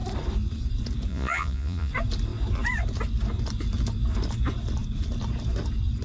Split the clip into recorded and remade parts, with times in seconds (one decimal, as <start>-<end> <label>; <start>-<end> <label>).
0.0-1.1 recorded; 1.1-1.9 remade; 1.9-6.0 recorded